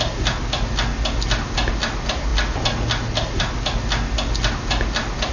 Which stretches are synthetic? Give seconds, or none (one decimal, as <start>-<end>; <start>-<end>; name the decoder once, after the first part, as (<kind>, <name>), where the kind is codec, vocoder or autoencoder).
none